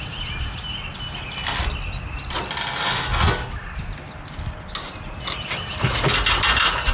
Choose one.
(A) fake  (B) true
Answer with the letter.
B